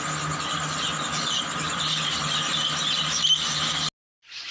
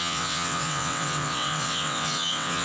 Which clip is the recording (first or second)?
first